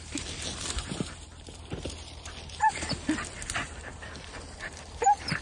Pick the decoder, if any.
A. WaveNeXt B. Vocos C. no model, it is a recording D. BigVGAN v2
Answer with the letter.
D